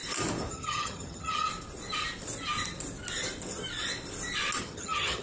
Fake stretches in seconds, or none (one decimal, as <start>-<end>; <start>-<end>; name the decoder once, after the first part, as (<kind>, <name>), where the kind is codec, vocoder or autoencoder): 0.5-1.5 (vocoder, HiFi-GAN); 4.6-5.2